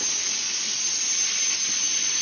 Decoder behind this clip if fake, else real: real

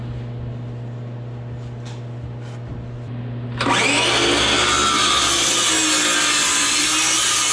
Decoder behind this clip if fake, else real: real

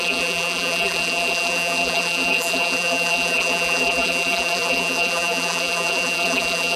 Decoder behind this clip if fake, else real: fake, vocoder, BigVGAN v2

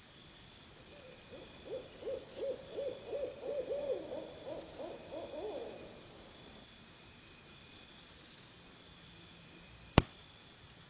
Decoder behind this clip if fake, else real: real